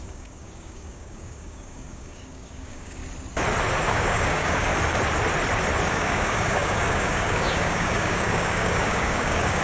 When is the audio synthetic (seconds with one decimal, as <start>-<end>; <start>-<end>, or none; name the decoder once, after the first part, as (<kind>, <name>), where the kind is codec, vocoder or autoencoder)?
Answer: 0.0-3.0 (codec, DAC); 3.9-4.7; 5.9-9.6

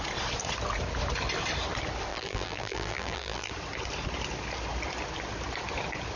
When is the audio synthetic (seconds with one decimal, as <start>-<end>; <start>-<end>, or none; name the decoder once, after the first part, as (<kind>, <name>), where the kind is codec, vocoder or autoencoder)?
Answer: 2.1-3.5 (vocoder, BigVGAN v2)

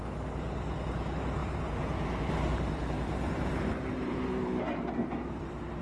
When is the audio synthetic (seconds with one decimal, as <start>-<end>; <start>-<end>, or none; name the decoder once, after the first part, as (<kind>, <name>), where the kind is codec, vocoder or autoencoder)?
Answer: 0.9-5.8 (vocoder, BigVGAN v2)

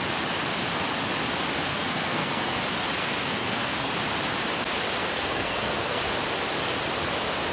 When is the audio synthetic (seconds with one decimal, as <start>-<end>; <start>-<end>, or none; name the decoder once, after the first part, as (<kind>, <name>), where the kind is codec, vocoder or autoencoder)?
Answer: 1.7-2.6 (codec, SNAC); 3.0-3.9; 5.0-6.0

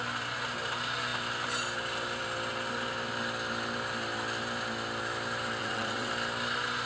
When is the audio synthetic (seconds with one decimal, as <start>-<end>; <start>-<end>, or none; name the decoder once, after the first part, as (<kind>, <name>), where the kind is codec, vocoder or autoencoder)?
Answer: 5.6-6.1 (vocoder, WaveNeXt)

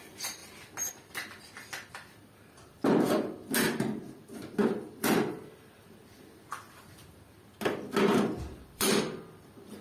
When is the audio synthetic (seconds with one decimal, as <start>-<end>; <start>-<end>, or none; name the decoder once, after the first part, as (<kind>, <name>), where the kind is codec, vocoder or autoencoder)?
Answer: 0.0-7.0 (vocoder, BigVGAN v2); 8.2-9.8

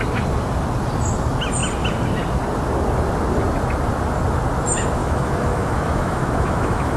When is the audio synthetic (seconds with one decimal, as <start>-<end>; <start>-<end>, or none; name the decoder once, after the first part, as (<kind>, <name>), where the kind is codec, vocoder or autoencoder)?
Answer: 5.0-7.0 (autoencoder, DAC-VAE)